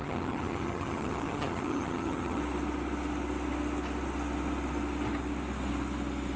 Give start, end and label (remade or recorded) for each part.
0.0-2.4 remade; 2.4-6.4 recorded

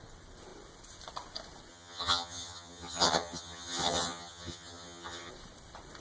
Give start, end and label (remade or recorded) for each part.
0.0-1.7 recorded; 1.7-5.3 remade; 5.3-6.0 recorded

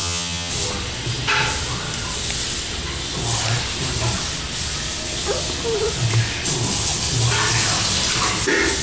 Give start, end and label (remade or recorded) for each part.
0.0-0.5 remade; 0.5-8.8 recorded

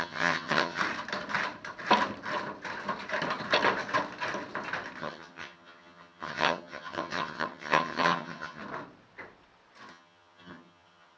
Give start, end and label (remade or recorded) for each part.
0.0-0.8 remade; 0.8-5.0 recorded; 5.0-8.6 remade; 8.6-9.9 recorded; 9.9-11.2 remade

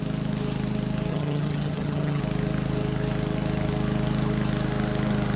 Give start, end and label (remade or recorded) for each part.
0.0-1.1 recorded; 1.1-2.2 remade; 2.2-5.4 recorded

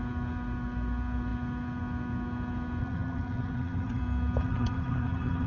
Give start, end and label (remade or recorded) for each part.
0.0-2.8 recorded; 2.8-4.0 remade; 4.0-4.4 recorded; 4.4-5.5 remade

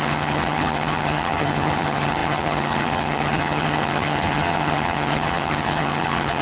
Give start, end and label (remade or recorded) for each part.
0.0-6.4 remade

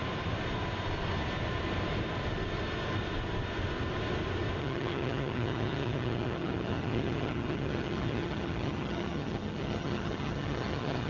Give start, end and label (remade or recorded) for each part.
0.0-4.6 recorded; 4.6-11.1 remade